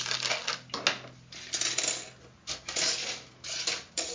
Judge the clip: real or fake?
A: real